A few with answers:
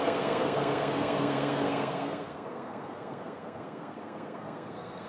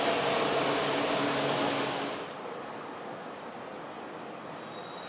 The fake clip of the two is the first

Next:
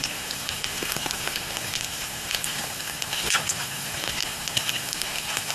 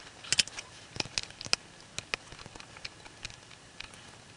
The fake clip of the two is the first